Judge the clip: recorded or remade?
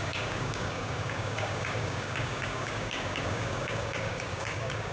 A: remade